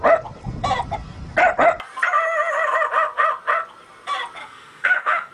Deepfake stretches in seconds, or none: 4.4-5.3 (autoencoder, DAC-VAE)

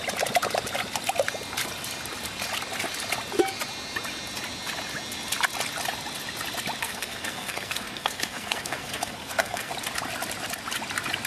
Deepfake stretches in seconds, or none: 6.8-9.7 (codec, SNAC)